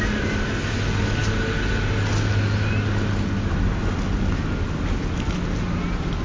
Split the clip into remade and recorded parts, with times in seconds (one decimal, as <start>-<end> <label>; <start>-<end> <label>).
0.0-6.2 recorded